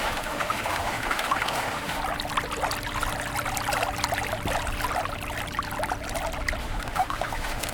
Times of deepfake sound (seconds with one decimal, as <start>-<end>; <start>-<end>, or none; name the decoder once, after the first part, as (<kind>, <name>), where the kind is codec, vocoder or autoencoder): 0.0-2.0 (autoencoder, DAC-VAE); 6.6-7.7